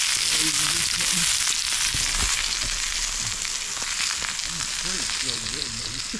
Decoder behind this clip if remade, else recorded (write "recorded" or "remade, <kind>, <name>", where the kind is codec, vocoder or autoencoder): recorded